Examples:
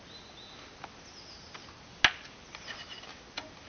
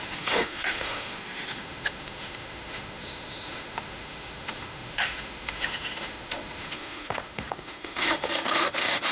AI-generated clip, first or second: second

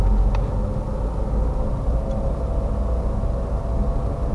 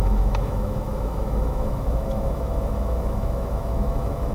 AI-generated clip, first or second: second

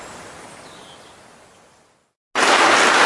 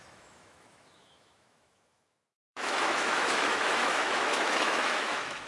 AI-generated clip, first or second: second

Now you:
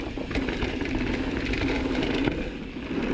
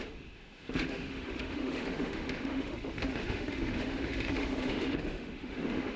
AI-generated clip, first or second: second